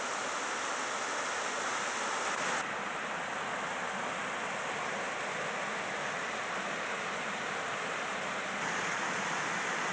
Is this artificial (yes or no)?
no